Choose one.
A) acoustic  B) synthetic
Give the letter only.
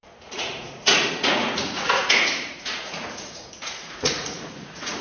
B